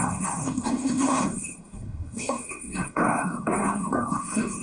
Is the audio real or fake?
fake